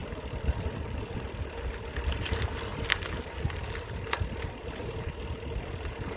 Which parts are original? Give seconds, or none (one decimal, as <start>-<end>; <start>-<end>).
2.3-2.7; 5.1-6.2